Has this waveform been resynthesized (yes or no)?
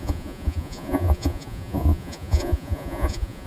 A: yes